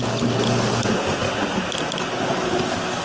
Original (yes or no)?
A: yes